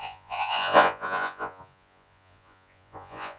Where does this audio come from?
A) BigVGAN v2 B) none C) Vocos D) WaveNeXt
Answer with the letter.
C